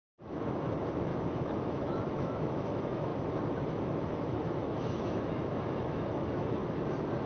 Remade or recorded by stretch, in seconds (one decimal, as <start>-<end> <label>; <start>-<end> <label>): 0.0-3.1 remade; 3.1-3.7 recorded; 3.7-6.6 remade; 6.6-7.3 recorded